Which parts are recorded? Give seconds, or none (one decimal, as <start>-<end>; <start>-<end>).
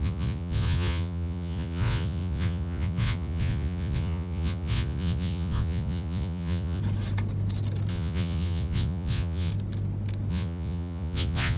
6.8-7.9; 9.5-10.3